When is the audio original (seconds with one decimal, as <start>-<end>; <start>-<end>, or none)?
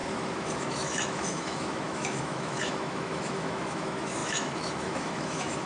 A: none